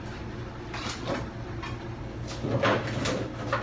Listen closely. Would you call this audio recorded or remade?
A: recorded